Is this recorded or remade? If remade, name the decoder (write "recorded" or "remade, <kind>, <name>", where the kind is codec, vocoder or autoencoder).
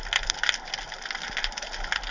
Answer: recorded